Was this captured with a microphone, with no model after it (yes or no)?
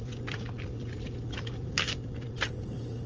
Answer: yes